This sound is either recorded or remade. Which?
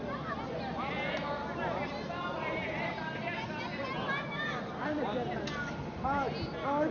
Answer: recorded